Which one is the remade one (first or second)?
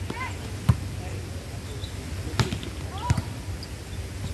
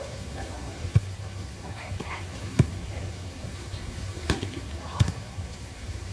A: second